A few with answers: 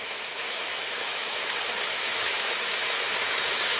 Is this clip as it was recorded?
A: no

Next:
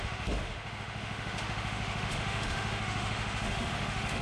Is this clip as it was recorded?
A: no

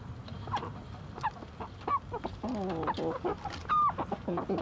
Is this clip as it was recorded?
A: yes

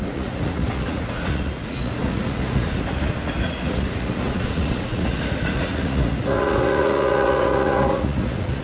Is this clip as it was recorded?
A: no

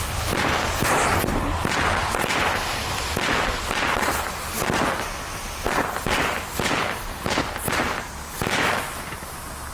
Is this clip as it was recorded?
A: yes